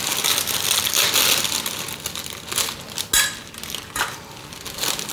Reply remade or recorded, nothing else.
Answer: recorded